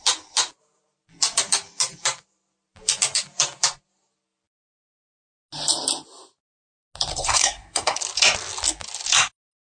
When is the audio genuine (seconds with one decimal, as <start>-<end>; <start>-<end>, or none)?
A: 0.0-7.1; 8.0-9.6